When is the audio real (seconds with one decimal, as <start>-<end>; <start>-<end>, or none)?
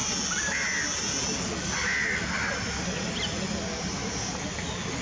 0.0-5.0